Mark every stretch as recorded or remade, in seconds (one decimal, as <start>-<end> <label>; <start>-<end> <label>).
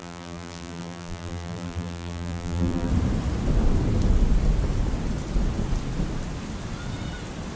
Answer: 0.0-2.9 remade; 2.9-7.6 recorded